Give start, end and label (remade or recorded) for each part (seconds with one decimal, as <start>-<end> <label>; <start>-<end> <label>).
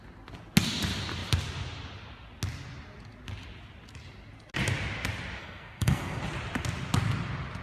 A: 0.0-5.4 recorded; 5.4-6.2 remade; 6.2-7.6 recorded